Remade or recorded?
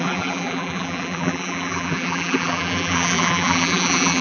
remade